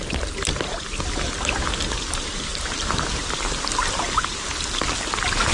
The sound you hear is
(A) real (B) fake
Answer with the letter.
A